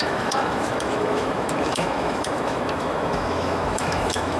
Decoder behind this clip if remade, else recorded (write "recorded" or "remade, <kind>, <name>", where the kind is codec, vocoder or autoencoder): remade, autoencoder, DAC-VAE